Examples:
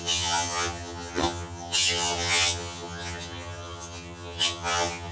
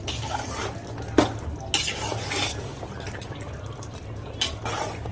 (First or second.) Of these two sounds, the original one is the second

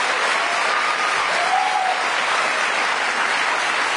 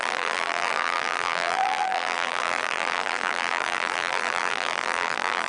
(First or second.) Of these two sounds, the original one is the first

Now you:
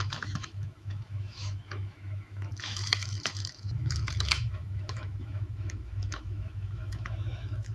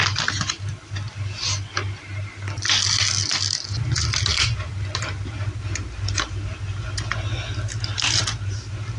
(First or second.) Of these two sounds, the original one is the second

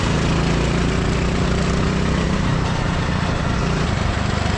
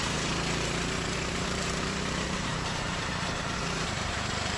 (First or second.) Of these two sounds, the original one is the first